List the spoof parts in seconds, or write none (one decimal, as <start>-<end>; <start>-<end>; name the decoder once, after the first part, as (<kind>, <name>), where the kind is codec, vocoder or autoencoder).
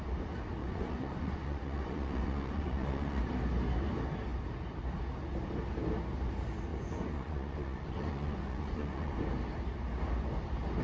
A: 0.6-3.2 (vocoder, Vocos); 6.7-9.3